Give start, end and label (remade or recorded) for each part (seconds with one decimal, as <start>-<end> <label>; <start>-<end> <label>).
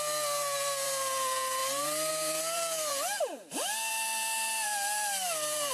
0.0-5.7 remade